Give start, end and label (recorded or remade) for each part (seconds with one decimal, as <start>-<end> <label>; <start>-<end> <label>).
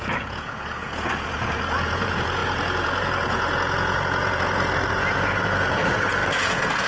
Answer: 0.0-6.9 remade